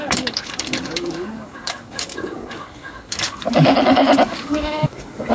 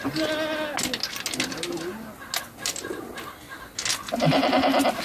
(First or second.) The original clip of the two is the second